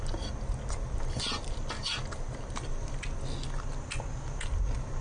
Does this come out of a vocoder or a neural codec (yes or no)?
no